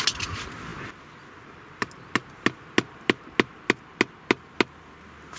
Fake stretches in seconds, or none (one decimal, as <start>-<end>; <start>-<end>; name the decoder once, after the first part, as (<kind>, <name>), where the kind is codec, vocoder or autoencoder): none